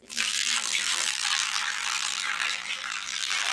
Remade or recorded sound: remade